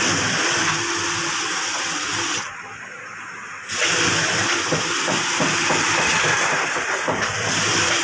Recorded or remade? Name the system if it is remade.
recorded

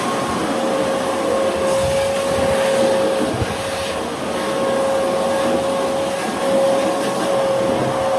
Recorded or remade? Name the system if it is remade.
recorded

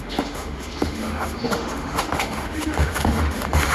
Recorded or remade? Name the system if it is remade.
remade, autoencoder, DAC-VAE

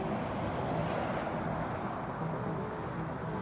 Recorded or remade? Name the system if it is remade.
recorded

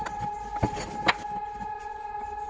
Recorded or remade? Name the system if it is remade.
recorded